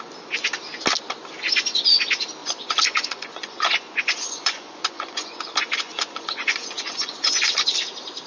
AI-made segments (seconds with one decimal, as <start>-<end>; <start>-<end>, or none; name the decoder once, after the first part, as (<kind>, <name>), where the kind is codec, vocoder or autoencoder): 2.4-7.4 (vocoder, Vocos)